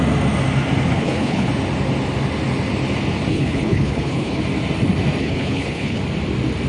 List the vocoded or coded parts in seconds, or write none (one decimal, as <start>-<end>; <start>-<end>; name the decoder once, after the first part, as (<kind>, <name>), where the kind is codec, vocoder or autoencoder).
0.9-1.5 (codec, HILCodec); 3.3-4.4; 5.2-6.0